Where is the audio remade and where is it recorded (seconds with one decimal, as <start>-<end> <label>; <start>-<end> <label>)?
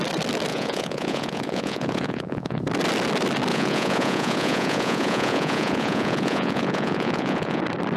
0.0-0.5 recorded; 0.5-2.6 remade; 2.6-3.5 recorded; 3.5-7.6 remade; 7.6-8.0 recorded